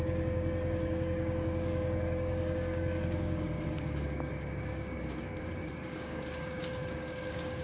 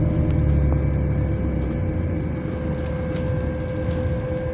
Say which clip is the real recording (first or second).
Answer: second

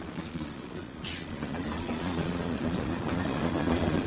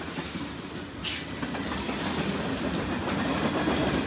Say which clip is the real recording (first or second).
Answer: second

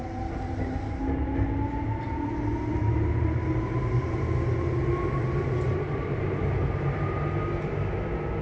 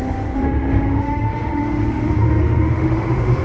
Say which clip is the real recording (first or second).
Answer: first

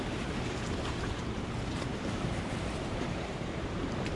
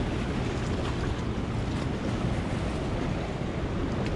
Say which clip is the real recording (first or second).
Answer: second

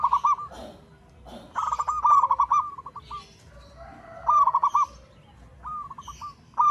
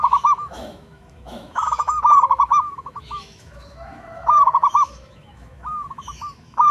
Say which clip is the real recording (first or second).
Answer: first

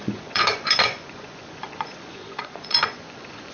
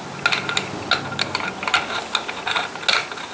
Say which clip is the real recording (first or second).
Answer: second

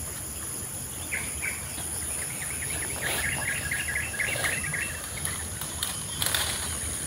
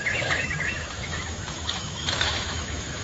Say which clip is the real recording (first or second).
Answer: first